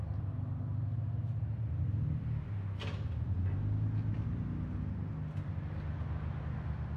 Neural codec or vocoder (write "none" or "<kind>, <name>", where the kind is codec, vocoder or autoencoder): none